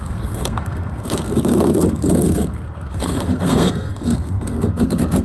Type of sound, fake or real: fake